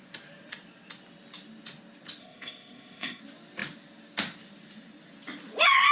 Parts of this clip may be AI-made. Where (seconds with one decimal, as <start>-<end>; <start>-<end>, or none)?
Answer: 2.2-3.2